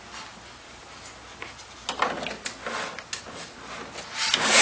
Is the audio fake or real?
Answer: real